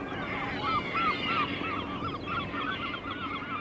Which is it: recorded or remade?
recorded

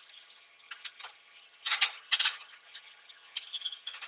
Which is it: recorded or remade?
remade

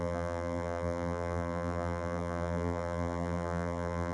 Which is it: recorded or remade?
remade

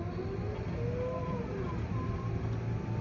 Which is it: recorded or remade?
recorded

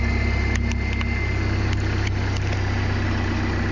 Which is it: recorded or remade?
recorded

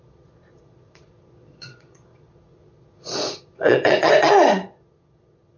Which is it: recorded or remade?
remade